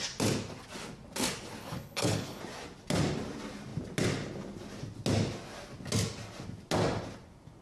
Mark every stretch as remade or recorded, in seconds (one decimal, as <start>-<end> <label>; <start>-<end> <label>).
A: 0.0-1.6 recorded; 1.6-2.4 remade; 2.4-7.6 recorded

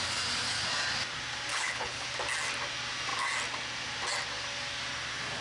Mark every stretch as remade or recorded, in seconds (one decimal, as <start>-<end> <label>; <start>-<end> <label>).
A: 0.0-1.5 recorded; 1.5-2.1 remade; 2.1-5.4 recorded

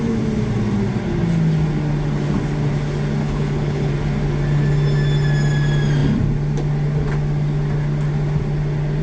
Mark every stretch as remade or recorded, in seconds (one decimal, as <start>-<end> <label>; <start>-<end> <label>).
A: 0.0-3.2 recorded; 3.2-3.9 remade; 3.9-9.0 recorded

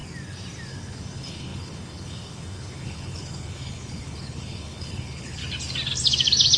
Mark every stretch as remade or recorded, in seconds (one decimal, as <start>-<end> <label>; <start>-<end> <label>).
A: 0.0-0.7 recorded; 0.7-5.4 remade; 5.4-6.6 recorded

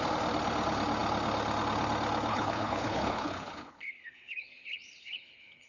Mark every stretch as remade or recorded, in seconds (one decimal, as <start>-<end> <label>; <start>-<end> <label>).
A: 0.0-2.3 recorded; 2.3-5.7 remade